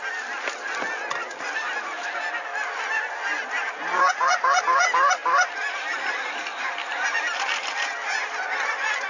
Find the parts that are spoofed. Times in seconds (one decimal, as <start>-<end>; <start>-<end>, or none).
none